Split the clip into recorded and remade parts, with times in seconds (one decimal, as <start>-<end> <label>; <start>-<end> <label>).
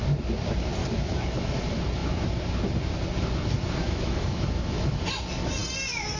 0.0-0.8 recorded; 0.8-1.6 remade; 1.6-3.8 recorded; 3.8-5.0 remade; 5.0-6.2 recorded